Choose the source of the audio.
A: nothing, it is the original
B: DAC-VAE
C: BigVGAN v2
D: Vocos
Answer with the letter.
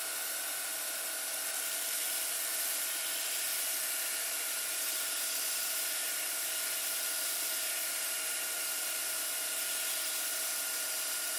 A